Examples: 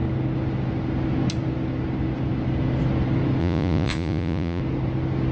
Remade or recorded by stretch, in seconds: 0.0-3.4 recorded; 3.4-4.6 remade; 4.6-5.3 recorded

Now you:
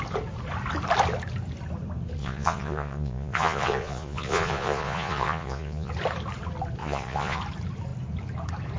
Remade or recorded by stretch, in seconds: 0.0-2.2 recorded; 2.2-5.9 remade; 5.9-6.8 recorded; 6.8-7.4 remade; 7.4-8.8 recorded

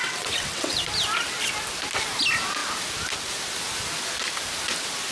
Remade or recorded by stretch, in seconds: 0.0-0.8 remade; 0.8-5.1 recorded

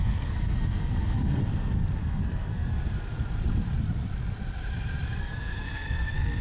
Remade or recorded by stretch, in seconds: 0.0-1.4 remade; 1.4-2.0 recorded; 2.0-2.7 remade; 2.7-5.2 recorded; 5.2-6.4 remade

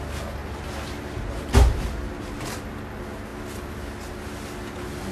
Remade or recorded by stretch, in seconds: 0.0-5.1 recorded

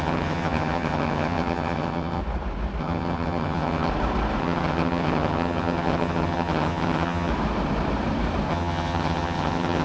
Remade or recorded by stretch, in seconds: 0.0-2.2 remade; 2.2-2.8 recorded; 2.8-3.9 remade; 3.9-4.4 recorded; 4.4-7.3 remade; 7.3-8.5 recorded; 8.5-9.8 remade

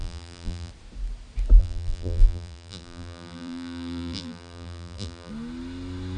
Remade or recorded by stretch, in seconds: 0.0-0.7 remade; 0.7-1.6 recorded; 1.6-5.3 remade; 5.3-6.2 recorded